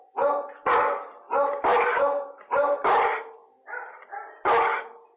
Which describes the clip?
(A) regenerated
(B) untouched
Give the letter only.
B